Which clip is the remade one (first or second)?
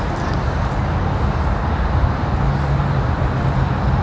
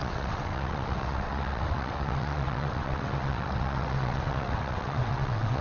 second